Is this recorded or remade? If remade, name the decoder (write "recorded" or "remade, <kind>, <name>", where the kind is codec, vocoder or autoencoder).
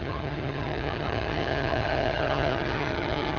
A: remade, vocoder, HiFi-GAN